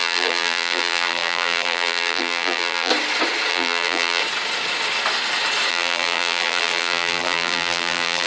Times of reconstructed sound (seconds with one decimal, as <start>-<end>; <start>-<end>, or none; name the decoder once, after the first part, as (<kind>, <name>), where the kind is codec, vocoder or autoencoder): 0.0-2.9 (vocoder, BigVGAN v2); 3.5-4.2; 5.7-8.3